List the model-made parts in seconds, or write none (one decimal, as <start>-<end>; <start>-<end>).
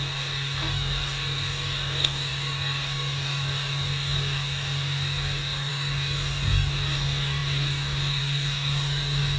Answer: 0.0-9.4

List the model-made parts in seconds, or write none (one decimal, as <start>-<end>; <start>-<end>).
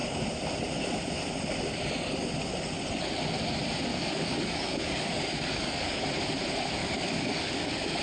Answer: 3.9-6.0; 6.8-8.0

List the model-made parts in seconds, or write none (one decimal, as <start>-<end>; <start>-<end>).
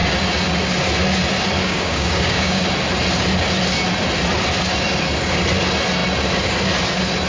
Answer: 1.6-2.6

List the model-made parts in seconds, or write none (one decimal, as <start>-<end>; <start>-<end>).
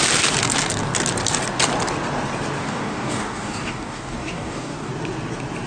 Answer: 2.6-4.9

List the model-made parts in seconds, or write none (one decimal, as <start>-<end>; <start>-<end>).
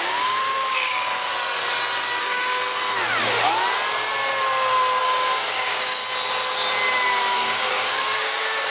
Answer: 0.0-1.3; 2.2-2.6; 5.0-6.0; 7.2-8.7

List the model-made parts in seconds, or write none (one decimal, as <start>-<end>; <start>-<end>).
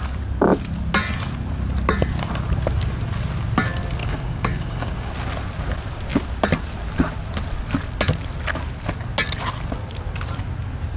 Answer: 4.0-5.1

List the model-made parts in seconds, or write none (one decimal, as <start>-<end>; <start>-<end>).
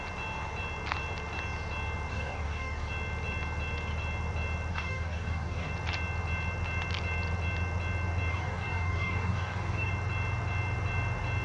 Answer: 2.1-2.9; 4.7-5.7; 8.3-9.9